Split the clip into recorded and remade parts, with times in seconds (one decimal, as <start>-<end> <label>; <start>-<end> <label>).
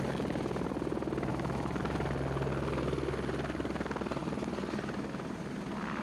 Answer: 0.0-1.3 recorded; 1.3-1.8 remade; 1.8-6.0 recorded